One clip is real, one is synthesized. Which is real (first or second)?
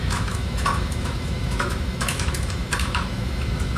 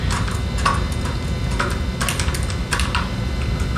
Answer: second